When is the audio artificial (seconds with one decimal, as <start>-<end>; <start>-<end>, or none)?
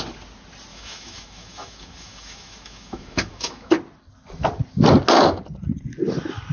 0.7-3.7